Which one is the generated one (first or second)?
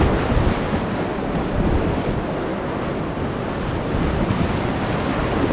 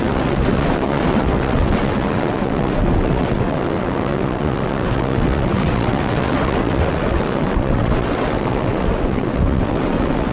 second